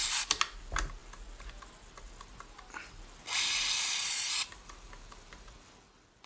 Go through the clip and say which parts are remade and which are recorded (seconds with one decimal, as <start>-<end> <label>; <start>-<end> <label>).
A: 0.0-6.3 recorded